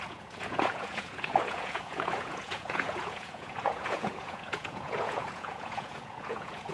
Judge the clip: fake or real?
fake